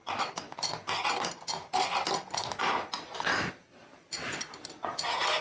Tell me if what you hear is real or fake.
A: real